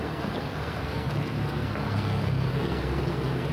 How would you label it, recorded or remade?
remade